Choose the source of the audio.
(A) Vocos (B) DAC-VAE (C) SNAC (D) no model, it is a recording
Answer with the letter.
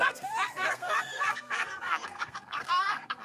C